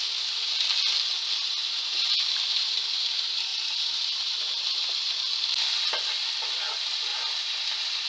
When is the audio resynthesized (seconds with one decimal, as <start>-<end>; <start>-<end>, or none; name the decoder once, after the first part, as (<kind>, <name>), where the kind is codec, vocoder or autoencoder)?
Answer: 1.6-3.1 (vocoder, BigVGAN v2); 3.5-5.2